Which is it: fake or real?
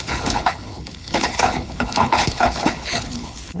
fake